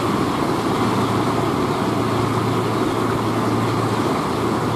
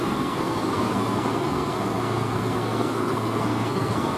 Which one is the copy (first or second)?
second